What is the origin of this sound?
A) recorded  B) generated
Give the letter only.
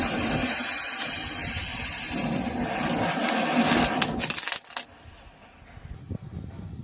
A